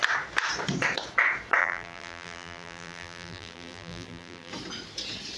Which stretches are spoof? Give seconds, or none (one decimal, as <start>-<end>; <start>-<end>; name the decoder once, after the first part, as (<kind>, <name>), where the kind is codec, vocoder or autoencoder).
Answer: 1.6-4.5 (vocoder, BigVGAN v2)